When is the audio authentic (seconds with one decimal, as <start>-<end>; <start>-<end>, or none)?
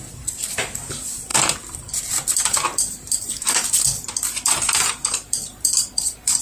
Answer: none